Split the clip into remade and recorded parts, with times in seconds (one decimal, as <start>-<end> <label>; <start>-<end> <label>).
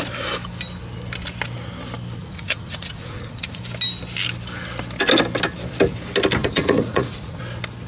0.0-2.2 recorded; 2.2-3.6 remade; 3.6-6.4 recorded; 6.4-7.4 remade; 7.4-7.9 recorded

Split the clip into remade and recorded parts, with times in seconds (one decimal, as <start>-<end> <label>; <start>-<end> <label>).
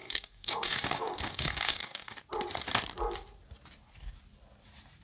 0.0-2.2 remade; 2.2-5.0 recorded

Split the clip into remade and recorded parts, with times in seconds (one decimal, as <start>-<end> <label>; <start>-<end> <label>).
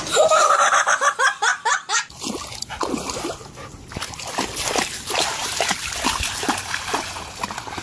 0.0-5.4 recorded; 5.4-6.0 remade; 6.0-7.8 recorded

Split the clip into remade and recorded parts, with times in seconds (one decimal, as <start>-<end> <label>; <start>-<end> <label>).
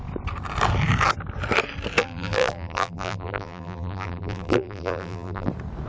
0.0-2.0 recorded; 2.0-5.5 remade; 5.5-5.9 recorded